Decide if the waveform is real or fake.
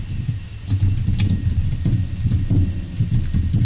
real